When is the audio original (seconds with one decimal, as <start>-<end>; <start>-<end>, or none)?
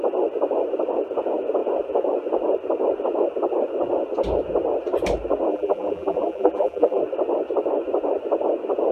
0.0-5.5; 7.0-8.9